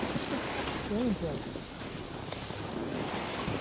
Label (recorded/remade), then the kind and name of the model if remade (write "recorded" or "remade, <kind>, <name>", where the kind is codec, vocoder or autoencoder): recorded